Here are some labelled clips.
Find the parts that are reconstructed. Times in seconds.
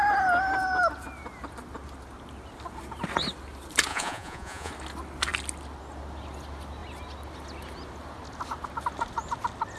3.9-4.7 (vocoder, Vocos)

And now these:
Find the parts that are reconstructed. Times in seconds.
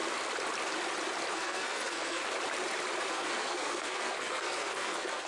1.3-2.2 (codec, SNAC); 3.1-5.3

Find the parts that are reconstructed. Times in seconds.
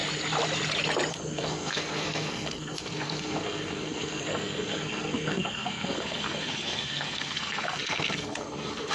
1.1-8.9 (codec, SNAC)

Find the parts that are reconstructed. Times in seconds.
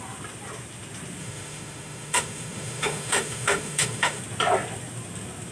1.2-4.2 (autoencoder, DAC-VAE)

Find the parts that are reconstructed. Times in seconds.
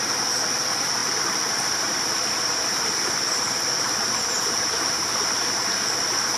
1.0-3.8 (vocoder, BigVGAN v2)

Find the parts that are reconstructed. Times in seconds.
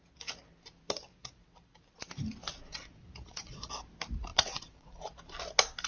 2.7-3.6 (vocoder, WaveNeXt); 4.3-5.0